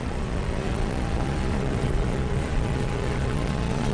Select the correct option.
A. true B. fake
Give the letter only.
B